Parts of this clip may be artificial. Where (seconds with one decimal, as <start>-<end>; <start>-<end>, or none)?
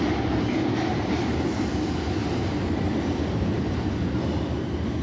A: 0.9-1.7; 2.2-3.9